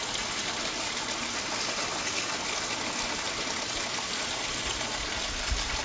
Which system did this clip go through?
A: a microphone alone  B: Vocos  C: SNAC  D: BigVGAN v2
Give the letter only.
A